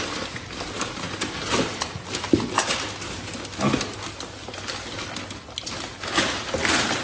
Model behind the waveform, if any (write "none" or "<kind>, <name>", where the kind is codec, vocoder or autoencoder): none